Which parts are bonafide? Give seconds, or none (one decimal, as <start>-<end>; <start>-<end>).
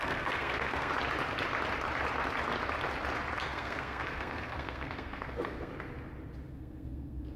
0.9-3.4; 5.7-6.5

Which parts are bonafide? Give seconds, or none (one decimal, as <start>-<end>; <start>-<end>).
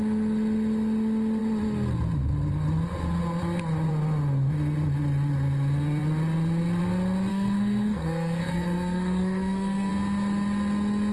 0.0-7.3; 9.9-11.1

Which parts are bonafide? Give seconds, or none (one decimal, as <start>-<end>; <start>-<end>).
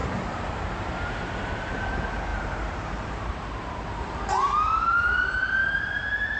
1.7-2.3; 3.8-5.6